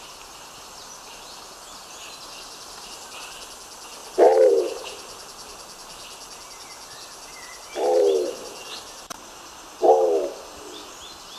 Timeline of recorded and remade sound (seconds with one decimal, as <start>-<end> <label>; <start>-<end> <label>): 0.0-11.4 recorded